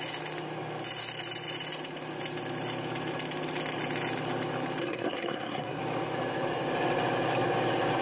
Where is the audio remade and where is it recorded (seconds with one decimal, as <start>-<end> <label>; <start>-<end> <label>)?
0.0-4.8 recorded; 4.8-5.8 remade; 5.8-8.0 recorded